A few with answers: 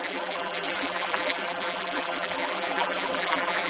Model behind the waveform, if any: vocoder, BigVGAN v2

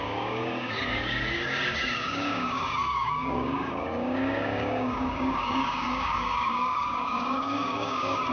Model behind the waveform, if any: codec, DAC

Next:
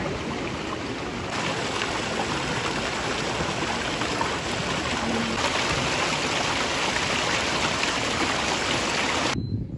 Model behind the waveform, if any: none